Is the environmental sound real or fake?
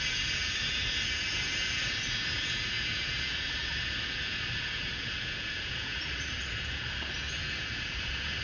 fake